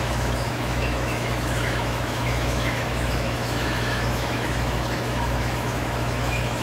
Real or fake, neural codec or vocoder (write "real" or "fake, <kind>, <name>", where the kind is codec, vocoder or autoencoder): fake, autoencoder, DAC-VAE